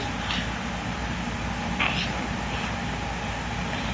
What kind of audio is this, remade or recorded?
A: recorded